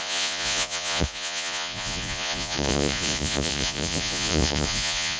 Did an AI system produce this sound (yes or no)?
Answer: yes